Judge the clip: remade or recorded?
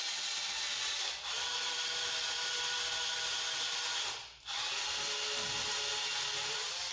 recorded